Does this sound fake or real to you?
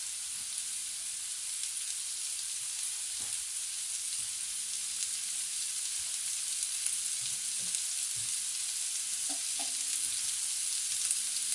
real